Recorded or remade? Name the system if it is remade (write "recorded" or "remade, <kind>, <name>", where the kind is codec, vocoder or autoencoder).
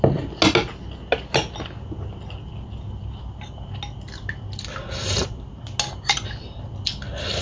recorded